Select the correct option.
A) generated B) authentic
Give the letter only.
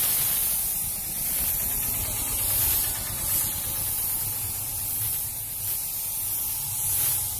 B